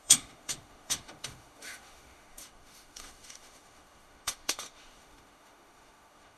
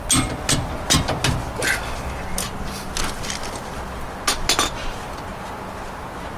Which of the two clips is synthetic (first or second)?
first